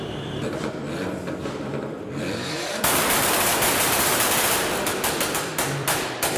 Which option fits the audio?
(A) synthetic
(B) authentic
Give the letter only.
A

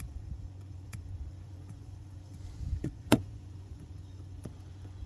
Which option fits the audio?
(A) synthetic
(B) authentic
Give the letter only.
A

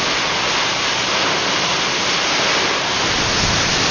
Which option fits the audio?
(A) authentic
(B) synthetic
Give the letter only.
A